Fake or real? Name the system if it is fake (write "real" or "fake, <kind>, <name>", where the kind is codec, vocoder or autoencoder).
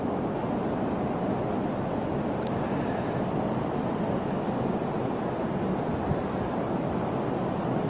real